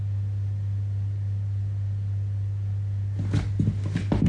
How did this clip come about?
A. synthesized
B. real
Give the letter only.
B